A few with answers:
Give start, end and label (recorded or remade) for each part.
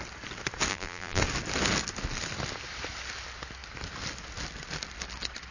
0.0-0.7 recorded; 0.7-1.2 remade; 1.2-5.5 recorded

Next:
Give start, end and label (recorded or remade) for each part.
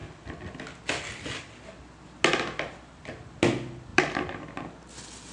0.0-3.9 recorded; 3.9-4.6 remade; 4.6-5.3 recorded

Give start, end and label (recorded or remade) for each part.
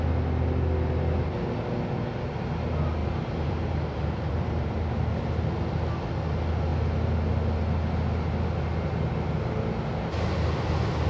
0.0-3.0 recorded; 3.0-4.9 remade; 4.9-11.1 recorded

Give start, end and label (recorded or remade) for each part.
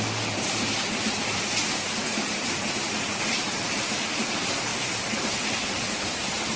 0.0-6.6 remade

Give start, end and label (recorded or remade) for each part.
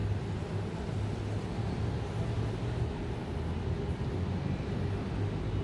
0.0-5.6 recorded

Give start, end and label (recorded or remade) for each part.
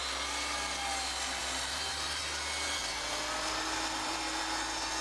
0.0-1.4 recorded; 1.4-2.2 remade; 2.2-2.8 recorded; 2.8-4.4 remade; 4.4-5.0 recorded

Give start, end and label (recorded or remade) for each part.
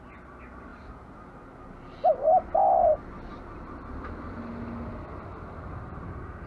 0.0-6.5 recorded